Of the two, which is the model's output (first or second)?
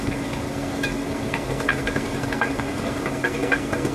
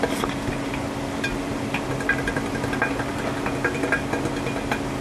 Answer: first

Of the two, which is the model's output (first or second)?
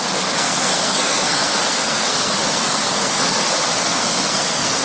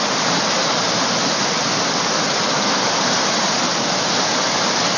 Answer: first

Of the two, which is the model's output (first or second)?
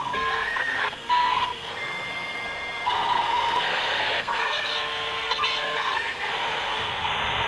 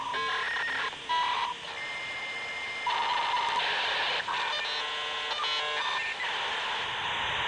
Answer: first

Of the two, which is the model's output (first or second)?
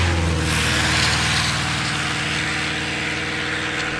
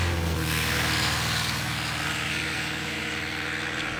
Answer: second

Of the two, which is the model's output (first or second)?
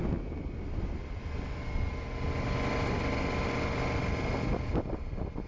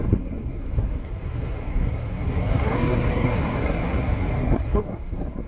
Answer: second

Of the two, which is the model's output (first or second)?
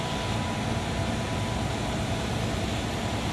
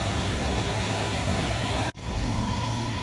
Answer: second